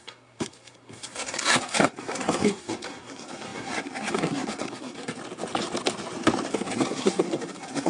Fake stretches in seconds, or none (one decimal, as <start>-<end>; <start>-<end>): 0.0-5.2; 6.5-7.9

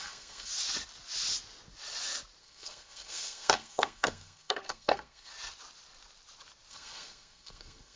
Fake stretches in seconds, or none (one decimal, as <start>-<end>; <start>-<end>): 0.0-0.5; 2.4-5.3; 6.7-8.0

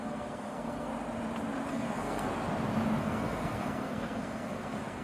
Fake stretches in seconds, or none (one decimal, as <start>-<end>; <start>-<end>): 0.0-0.9; 1.7-2.3; 3.0-5.0

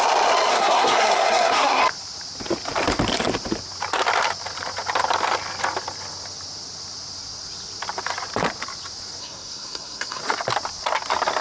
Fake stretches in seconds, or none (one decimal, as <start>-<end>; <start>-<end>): 0.5-1.8; 9.2-10.2

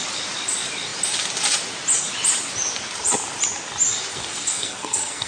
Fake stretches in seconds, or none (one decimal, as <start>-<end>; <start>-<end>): 4.1-5.3